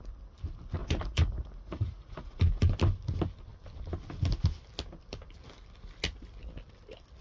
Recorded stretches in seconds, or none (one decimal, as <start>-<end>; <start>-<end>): 0.0-0.8; 2.4-7.2